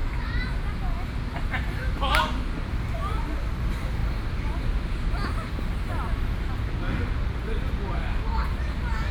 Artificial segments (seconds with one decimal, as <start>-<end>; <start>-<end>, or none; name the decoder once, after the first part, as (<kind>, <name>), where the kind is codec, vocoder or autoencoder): none